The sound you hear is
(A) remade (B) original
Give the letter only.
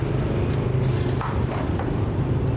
B